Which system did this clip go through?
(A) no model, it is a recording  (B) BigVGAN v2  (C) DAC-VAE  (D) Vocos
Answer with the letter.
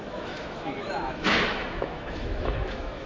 C